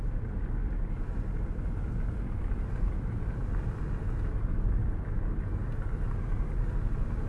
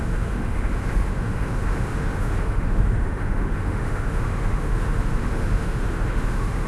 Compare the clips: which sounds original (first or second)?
first